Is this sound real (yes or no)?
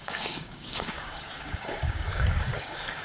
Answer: no